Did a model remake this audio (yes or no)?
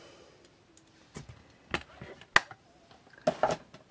no